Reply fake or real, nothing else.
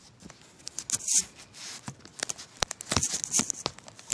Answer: real